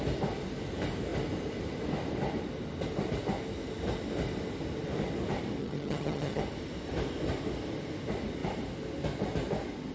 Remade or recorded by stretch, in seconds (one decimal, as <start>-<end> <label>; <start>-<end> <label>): 0.0-5.6 recorded; 5.6-6.4 remade; 6.4-9.9 recorded